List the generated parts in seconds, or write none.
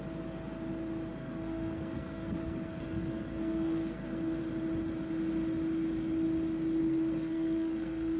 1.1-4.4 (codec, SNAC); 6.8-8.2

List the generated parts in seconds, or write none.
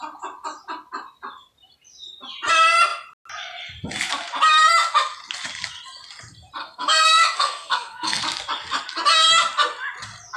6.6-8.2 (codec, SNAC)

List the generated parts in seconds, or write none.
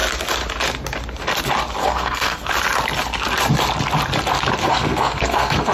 1.8-2.5 (codec, SNAC); 4.6-5.7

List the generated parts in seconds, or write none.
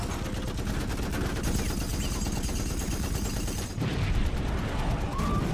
1.9-4.7 (vocoder, BigVGAN v2)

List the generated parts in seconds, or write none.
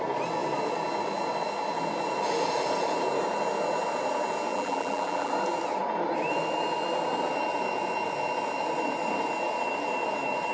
4.5-5.3 (vocoder, BigVGAN v2)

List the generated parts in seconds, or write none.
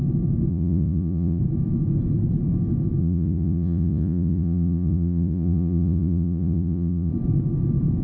0.5-1.4 (vocoder, Vocos); 3.0-7.1